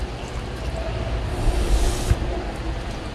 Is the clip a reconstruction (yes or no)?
no